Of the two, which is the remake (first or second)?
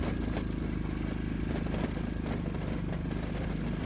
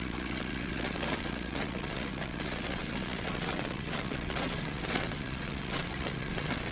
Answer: second